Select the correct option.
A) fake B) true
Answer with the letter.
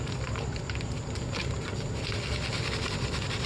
B